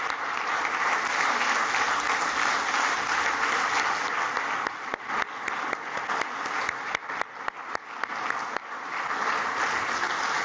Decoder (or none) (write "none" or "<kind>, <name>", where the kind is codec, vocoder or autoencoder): none